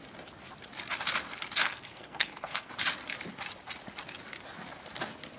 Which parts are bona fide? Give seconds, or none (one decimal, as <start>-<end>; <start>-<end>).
0.0-1.6; 2.7-5.4